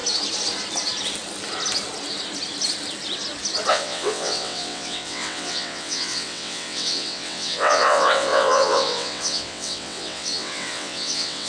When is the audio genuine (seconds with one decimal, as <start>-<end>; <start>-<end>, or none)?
0.0-3.7